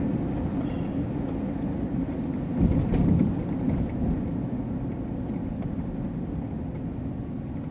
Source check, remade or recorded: recorded